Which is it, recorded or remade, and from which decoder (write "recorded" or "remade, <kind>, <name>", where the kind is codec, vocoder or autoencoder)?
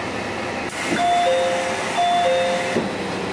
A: recorded